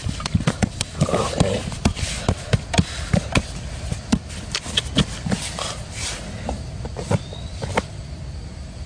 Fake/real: fake